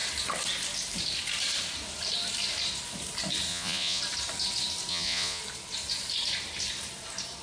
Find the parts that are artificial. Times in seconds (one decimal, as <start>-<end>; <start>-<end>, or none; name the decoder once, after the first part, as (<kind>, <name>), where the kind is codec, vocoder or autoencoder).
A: 3.5-4.0 (vocoder, Vocos); 4.9-5.4